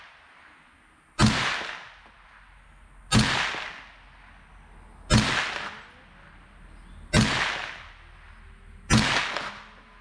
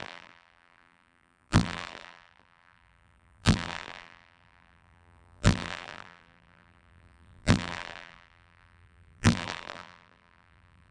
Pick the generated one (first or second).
second